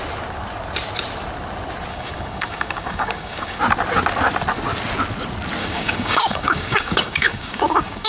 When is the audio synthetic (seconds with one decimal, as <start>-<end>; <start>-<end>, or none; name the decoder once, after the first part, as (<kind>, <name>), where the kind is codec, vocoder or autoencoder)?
1.9-3.6 (codec, DAC); 5.6-8.1